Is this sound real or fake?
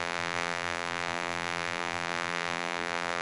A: fake